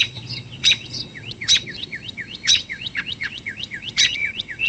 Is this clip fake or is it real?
fake